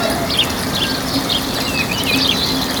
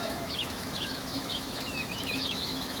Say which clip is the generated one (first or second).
second